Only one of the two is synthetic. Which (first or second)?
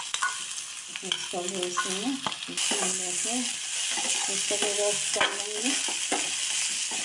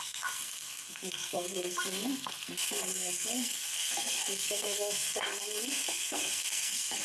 second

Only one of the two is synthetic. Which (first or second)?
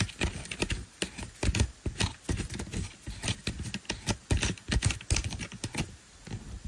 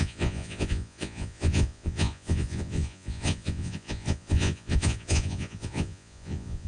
second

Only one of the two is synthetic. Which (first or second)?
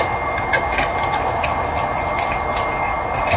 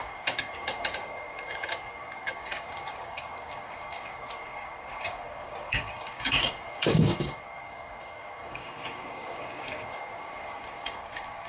second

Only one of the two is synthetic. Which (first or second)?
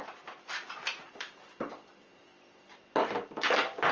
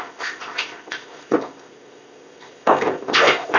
second